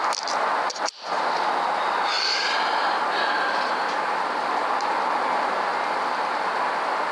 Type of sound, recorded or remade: recorded